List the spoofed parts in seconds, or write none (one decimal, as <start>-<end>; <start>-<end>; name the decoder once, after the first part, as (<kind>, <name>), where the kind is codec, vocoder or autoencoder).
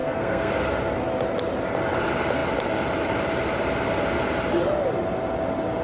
0.0-0.5 (codec, SNAC)